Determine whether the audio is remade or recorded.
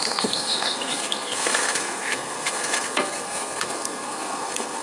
remade